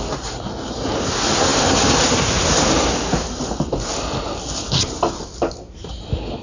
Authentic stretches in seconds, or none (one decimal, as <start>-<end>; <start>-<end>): 0.0-6.4